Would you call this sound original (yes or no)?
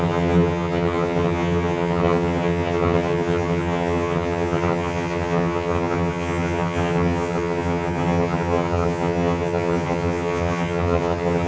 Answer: no